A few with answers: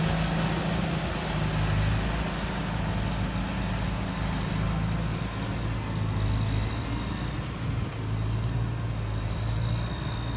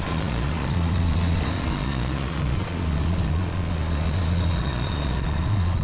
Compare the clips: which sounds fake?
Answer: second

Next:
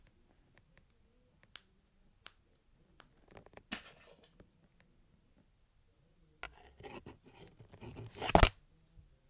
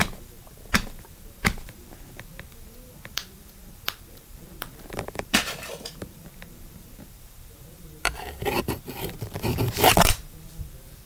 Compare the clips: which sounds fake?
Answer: second